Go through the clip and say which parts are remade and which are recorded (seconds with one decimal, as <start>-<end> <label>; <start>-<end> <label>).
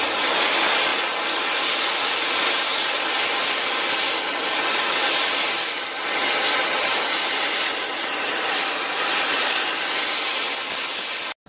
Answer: 0.0-11.5 recorded